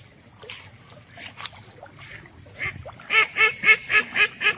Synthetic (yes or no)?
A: no